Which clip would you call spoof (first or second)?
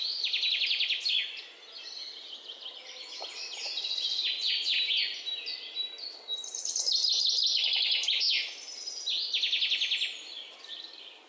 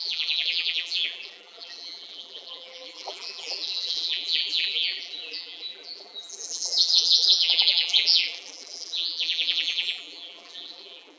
second